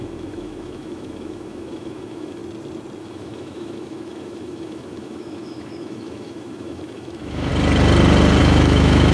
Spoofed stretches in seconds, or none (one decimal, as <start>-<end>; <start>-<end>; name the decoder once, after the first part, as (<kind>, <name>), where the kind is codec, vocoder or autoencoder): 0.0-2.4 (autoencoder, DAC-VAE); 3.0-7.5; 8.4-9.1